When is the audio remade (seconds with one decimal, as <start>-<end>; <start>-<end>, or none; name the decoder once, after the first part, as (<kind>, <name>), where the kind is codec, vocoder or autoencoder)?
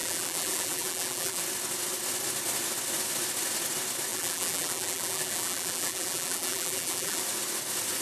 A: 0.0-1.4 (vocoder, BigVGAN v2); 4.1-7.2